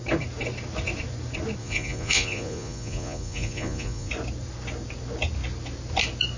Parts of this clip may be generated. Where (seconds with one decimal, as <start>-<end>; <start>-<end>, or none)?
1.6-4.1